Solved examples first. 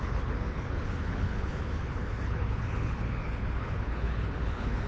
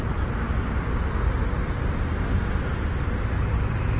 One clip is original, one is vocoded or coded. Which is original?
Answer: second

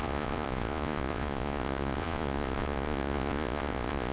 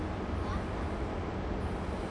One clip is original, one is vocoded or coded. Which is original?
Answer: second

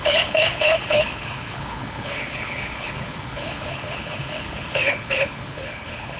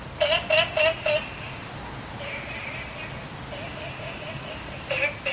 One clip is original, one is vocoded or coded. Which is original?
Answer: second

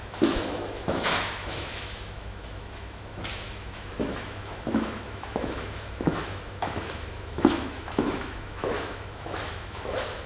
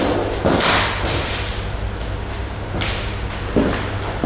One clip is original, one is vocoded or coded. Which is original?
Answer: second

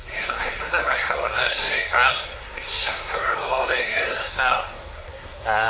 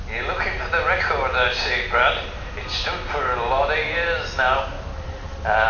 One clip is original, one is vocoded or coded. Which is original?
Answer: second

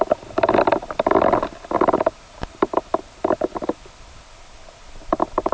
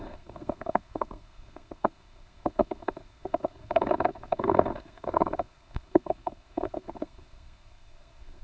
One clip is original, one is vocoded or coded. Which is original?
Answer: first